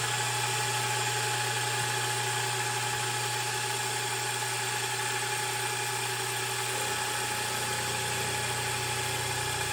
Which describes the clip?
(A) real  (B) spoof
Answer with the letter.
A